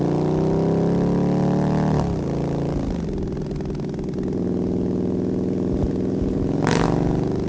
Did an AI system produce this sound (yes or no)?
no